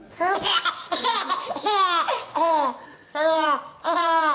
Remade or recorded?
remade